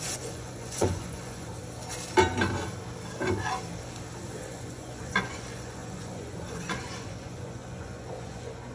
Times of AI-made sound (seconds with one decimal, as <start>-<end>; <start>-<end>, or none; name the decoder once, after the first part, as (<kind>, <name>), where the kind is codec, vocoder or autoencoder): 0.0-1.5 (vocoder, Vocos); 4.2-8.7